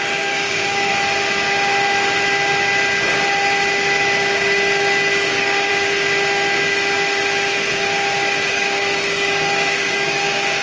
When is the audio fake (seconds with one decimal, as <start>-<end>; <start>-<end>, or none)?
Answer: 0.0-0.9; 5.3-5.7; 8.5-10.6